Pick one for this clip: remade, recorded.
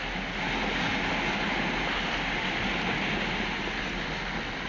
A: recorded